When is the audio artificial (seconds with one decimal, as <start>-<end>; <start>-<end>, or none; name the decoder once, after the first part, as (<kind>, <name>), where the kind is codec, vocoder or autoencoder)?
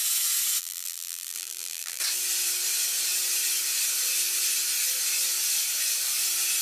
0.6-2.0 (vocoder, BigVGAN v2)